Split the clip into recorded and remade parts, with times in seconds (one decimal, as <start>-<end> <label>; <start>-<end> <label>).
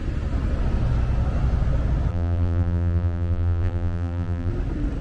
0.0-2.1 recorded; 2.1-4.5 remade; 4.5-5.0 recorded